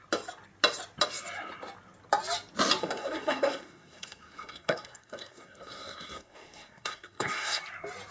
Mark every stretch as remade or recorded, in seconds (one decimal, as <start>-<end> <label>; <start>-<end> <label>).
0.0-2.8 recorded; 2.8-7.6 remade; 7.6-8.1 recorded